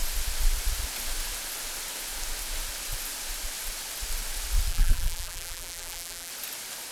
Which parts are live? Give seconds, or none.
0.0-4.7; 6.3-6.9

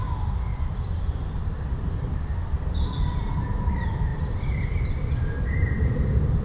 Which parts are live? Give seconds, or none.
0.0-0.5; 2.0-4.1

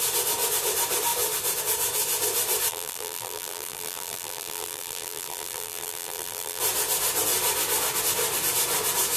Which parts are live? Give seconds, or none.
0.0-2.7; 6.6-9.2

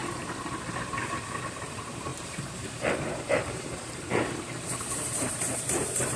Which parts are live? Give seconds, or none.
0.0-1.6

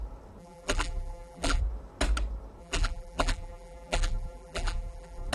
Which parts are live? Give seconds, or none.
0.0-0.4; 1.6-2.6